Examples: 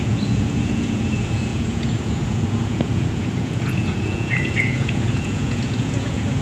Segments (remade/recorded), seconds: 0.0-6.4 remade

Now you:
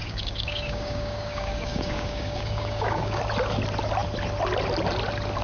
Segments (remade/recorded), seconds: 0.0-3.2 remade; 3.2-5.4 recorded

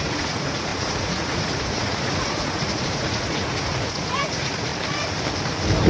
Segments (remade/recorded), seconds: 0.0-4.7 remade; 4.7-5.9 recorded

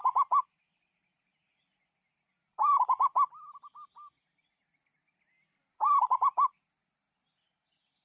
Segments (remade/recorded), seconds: 0.0-8.0 recorded